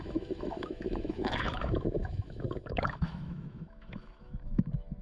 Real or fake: fake